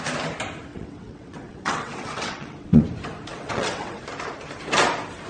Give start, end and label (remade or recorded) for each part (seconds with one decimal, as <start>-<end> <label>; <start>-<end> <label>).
0.0-0.7 recorded; 0.7-2.8 remade; 2.8-3.3 recorded; 3.3-4.0 remade; 4.0-5.3 recorded